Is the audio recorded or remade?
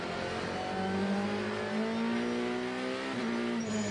recorded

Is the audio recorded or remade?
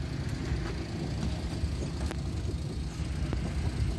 recorded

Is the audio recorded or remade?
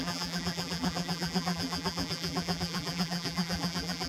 remade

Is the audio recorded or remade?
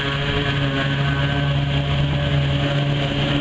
recorded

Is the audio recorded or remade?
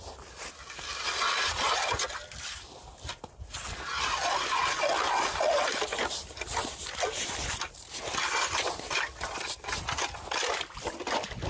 recorded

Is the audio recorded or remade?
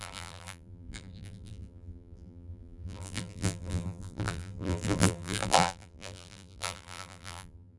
remade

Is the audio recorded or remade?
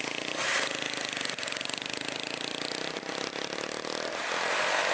recorded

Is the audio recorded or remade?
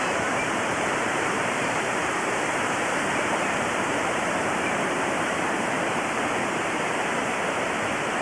remade